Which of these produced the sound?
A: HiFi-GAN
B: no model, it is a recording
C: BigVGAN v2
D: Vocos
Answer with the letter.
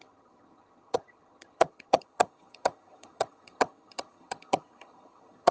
A